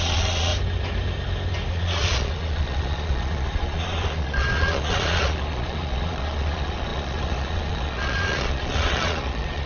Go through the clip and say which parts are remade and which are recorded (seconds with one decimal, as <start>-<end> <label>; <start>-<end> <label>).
0.0-0.5 remade; 0.5-1.7 recorded; 1.7-9.7 remade